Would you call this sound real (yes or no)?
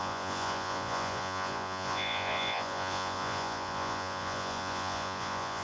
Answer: no